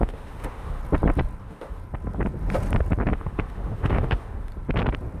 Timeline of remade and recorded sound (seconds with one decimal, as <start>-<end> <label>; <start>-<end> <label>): 0.0-0.8 remade; 0.8-1.4 recorded; 1.4-1.8 remade; 1.8-3.1 recorded; 3.1-4.5 remade; 4.5-5.2 recorded